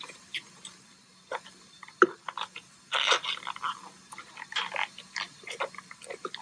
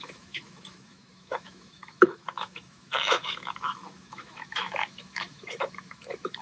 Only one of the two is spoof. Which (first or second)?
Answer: second